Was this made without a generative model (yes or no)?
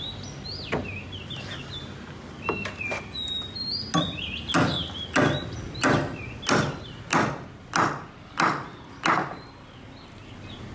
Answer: yes